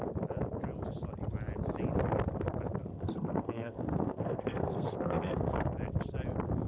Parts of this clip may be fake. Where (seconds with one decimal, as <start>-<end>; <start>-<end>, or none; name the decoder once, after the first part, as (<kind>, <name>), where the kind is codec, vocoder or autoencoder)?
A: 2.9-5.7 (codec, SNAC)